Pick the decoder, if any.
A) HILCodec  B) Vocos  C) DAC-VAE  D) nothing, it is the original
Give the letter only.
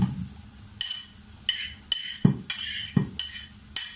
D